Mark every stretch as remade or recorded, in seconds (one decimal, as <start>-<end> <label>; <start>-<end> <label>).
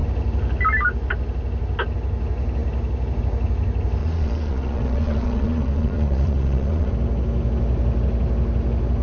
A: 0.0-4.0 recorded; 4.0-6.9 remade; 6.9-9.0 recorded